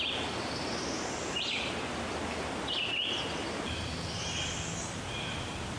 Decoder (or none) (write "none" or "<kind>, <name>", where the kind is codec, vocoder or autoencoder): none